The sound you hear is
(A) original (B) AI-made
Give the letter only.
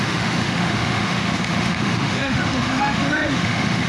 B